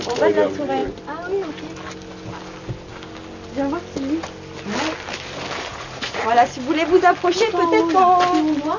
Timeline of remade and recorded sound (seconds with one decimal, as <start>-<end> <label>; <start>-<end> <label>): 0.0-5.7 recorded; 5.7-6.3 remade; 6.3-8.8 recorded